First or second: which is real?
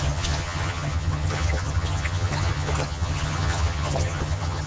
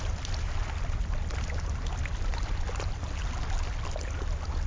second